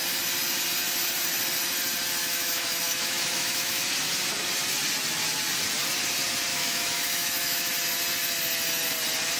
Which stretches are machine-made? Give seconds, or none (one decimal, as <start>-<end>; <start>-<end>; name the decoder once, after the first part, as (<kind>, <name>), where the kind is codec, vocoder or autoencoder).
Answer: 2.2-3.8 (autoencoder, DAC-VAE); 6.5-7.7